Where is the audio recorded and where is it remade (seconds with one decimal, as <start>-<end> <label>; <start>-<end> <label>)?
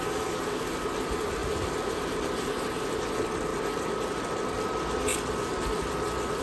0.0-6.4 recorded